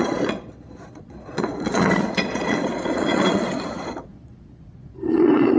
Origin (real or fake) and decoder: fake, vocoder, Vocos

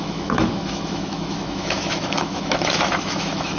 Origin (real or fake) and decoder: fake, autoencoder, DAC-VAE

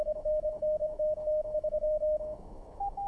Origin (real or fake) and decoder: fake, autoencoder, DAC-VAE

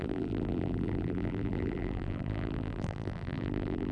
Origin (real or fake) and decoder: fake, vocoder, BigVGAN v2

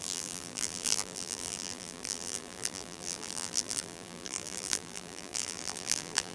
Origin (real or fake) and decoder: fake, vocoder, BigVGAN v2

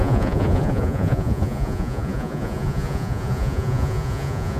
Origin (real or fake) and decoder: fake, vocoder, Vocos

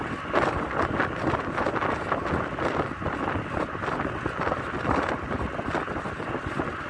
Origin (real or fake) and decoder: real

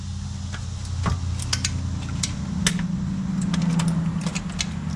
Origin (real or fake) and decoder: real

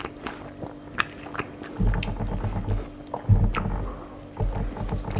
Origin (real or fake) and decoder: real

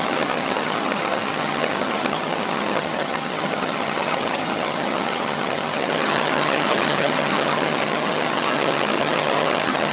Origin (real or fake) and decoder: fake, vocoder, HiFi-GAN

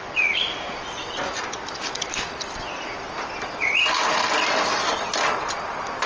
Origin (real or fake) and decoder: real